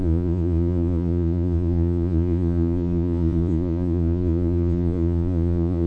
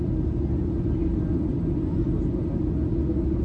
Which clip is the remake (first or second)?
first